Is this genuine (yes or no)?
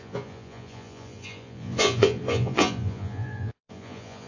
no